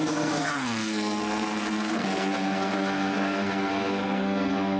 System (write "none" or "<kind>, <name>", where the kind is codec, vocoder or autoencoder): codec, SNAC